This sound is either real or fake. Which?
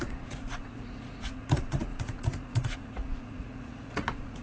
fake